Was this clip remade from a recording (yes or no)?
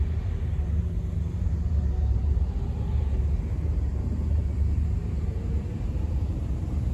yes